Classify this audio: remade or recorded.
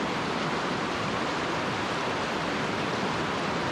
recorded